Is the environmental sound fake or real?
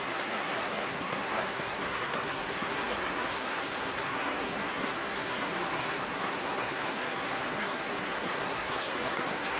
fake